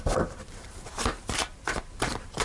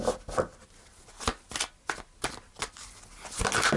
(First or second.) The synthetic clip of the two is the first